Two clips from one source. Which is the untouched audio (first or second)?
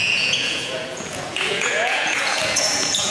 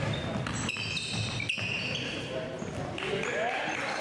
second